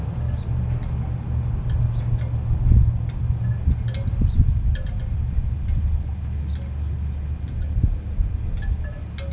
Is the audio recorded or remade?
recorded